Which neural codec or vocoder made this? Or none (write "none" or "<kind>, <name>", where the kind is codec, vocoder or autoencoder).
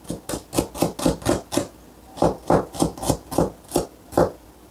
none